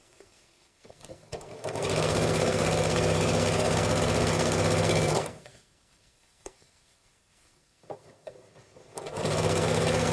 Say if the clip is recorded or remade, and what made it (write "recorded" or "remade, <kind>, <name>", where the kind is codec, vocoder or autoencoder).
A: remade, codec, SNAC